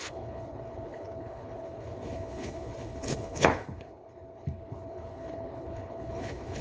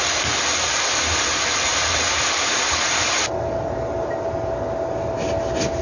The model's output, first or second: first